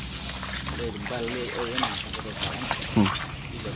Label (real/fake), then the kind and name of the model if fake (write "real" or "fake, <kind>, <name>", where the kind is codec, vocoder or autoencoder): real